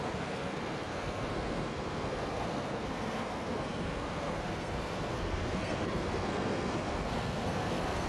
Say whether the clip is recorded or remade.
remade